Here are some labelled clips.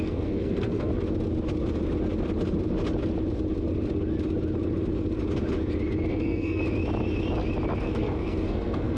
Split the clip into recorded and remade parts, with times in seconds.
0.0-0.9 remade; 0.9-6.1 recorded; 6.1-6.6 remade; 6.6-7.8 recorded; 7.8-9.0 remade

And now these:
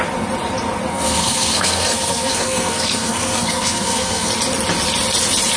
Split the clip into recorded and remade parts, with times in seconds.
0.0-0.9 recorded; 0.9-4.3 remade; 4.3-5.6 recorded

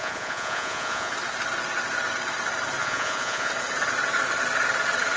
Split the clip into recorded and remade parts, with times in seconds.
0.0-1.1 remade; 1.1-2.8 recorded; 2.8-3.5 remade; 3.5-5.2 recorded

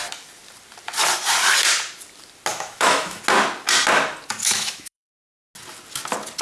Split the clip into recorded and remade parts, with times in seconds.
0.0-2.5 recorded; 2.5-3.2 remade; 3.2-4.4 recorded; 4.4-5.1 remade; 5.1-6.4 recorded

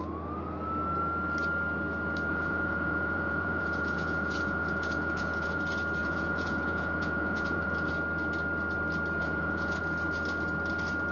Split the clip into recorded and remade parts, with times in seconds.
0.0-2.3 recorded; 2.3-5.6 remade; 5.6-6.0 recorded; 6.0-7.9 remade; 7.9-9.2 recorded; 9.2-9.8 remade; 9.8-11.1 recorded

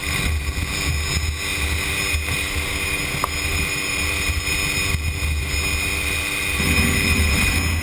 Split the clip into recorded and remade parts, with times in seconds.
0.0-3.5 recorded; 3.5-4.4 remade; 4.4-7.8 recorded

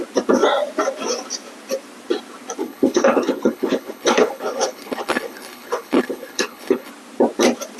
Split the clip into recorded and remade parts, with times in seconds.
0.0-2.6 recorded; 2.6-6.9 remade; 6.9-7.8 recorded

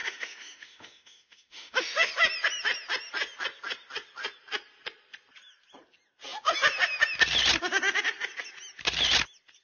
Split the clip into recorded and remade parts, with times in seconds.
0.0-2.1 remade; 2.1-9.6 recorded